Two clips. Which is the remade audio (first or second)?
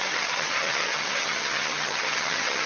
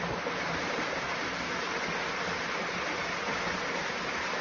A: first